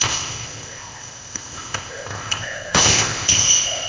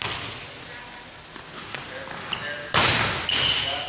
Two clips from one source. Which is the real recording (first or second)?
second